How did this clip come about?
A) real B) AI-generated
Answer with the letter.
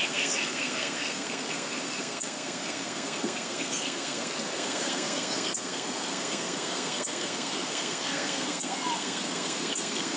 B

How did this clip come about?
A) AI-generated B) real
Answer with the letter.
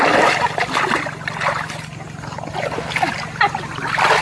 B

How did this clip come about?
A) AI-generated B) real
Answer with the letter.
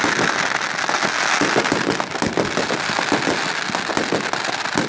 B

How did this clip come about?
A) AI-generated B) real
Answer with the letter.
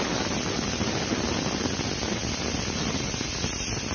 B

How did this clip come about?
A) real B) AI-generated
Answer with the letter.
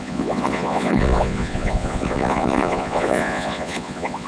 B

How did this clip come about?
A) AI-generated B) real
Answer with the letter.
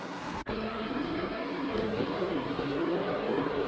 A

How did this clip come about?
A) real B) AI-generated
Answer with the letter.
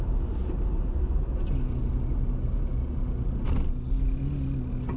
A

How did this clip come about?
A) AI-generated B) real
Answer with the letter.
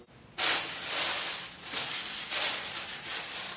B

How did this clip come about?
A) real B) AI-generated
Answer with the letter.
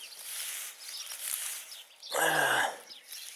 A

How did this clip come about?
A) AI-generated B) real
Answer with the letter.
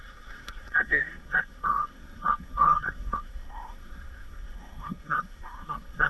A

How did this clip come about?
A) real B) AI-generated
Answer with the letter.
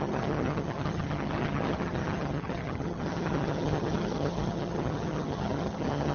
B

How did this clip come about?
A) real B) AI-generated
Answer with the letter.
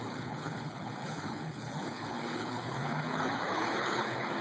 B